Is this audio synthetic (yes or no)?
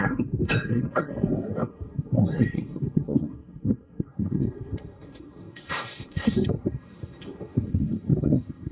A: yes